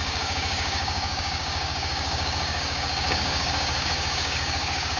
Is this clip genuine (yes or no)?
no